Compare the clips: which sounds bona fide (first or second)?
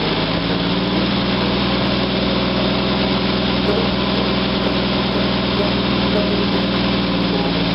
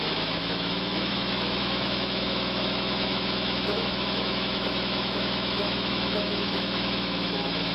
first